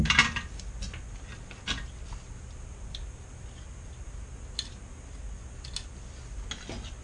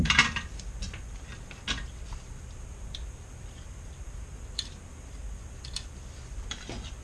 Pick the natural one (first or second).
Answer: first